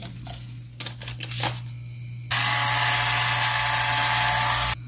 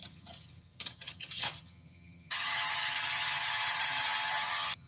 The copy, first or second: second